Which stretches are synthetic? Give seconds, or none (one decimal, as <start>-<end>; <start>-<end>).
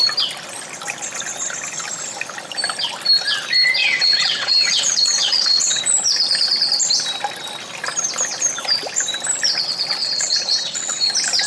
3.8-5.8; 10.0-11.1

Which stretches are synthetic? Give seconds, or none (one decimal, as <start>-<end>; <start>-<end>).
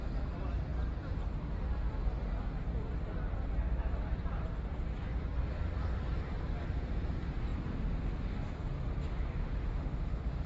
9.4-10.5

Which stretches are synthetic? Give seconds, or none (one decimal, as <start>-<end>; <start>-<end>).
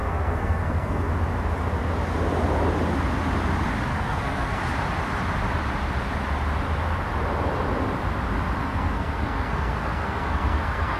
0.0-1.1; 3.9-4.6; 8.6-11.0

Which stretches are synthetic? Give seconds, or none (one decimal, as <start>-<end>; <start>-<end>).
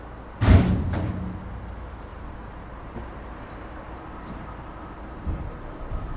2.1-5.8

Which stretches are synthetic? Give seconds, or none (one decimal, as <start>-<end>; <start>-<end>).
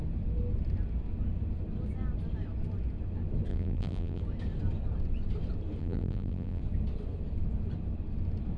3.5-4.2; 5.8-6.6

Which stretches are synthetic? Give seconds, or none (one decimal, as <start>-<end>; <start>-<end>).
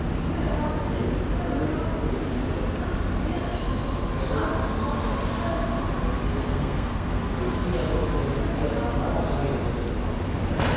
6.3-7.2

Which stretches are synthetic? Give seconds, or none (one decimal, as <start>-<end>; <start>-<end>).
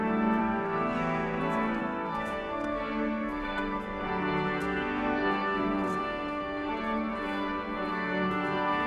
0.4-1.4; 1.8-6.7; 7.9-8.9